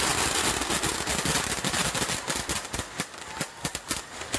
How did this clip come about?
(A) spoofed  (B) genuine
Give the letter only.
B